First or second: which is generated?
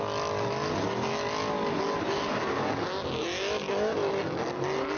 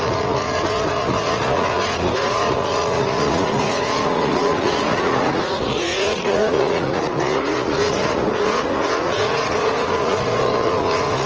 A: second